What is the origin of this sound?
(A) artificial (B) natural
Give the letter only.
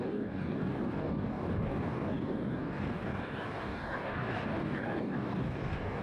A